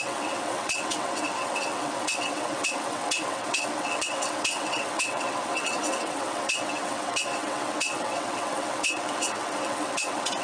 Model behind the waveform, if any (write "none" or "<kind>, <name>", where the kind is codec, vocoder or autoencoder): vocoder, WaveNeXt